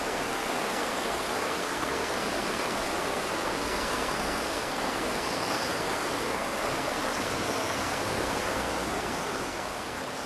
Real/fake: fake